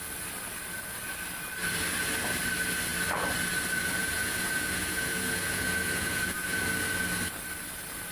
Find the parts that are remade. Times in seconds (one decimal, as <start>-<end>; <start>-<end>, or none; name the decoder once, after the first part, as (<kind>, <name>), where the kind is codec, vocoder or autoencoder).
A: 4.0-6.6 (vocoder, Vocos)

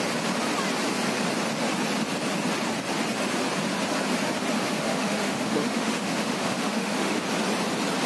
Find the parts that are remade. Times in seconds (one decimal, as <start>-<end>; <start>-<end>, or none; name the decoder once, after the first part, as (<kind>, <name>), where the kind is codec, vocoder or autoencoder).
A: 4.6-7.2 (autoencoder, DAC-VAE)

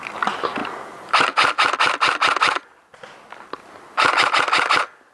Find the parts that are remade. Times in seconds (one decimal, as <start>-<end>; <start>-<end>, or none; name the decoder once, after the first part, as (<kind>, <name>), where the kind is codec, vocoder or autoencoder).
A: none

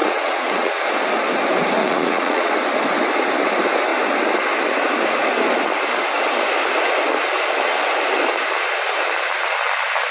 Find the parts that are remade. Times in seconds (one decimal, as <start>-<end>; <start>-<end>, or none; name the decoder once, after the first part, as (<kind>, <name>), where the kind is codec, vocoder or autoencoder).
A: 0.0-0.8 (vocoder, Vocos); 1.8-2.5